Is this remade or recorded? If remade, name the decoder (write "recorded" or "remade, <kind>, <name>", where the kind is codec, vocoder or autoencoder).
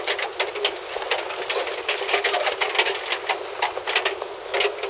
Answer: recorded